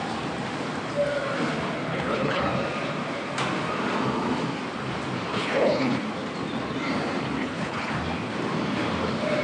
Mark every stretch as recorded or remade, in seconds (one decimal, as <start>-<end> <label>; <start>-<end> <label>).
0.0-1.9 recorded; 1.9-2.4 remade; 2.4-5.3 recorded; 5.3-6.0 remade; 6.0-7.4 recorded; 7.4-7.9 remade; 7.9-9.4 recorded